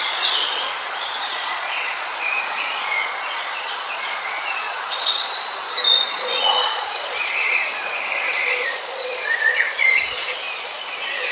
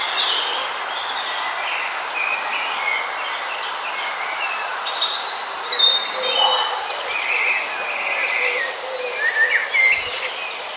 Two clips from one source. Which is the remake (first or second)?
first